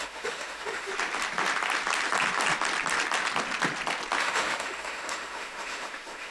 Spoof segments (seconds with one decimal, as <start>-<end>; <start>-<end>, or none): 0.0-0.9; 4.2-6.3